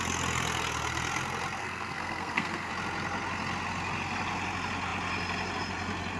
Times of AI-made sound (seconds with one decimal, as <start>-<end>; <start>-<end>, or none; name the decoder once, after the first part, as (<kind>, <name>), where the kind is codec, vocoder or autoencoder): 1.6-2.7 (codec, SNAC)